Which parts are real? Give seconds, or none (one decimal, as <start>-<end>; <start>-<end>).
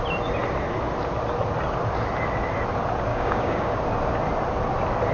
0.0-3.1; 3.8-5.1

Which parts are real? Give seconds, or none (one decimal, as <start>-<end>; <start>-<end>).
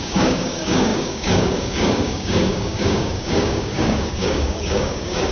none